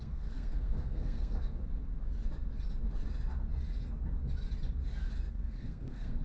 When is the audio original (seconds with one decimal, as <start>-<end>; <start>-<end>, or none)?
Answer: 1.6-5.3